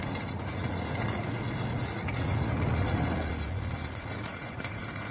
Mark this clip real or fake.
fake